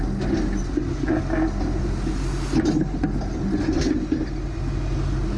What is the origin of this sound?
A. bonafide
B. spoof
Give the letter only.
A